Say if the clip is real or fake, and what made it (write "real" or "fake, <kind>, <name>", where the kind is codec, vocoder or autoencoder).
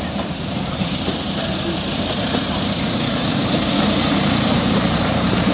fake, vocoder, BigVGAN v2